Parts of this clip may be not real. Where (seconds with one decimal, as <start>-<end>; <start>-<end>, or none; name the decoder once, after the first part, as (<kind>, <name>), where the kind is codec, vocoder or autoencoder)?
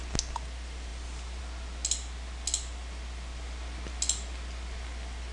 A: none